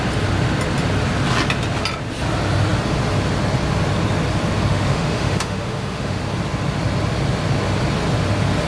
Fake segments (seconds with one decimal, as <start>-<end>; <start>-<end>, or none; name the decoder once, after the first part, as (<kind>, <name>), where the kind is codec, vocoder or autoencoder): 4.7-6.2 (autoencoder, DAC-VAE)